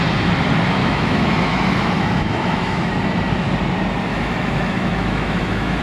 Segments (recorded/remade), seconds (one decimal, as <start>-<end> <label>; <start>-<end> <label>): 0.0-0.8 recorded; 0.8-2.9 remade; 2.9-4.1 recorded; 4.1-5.8 remade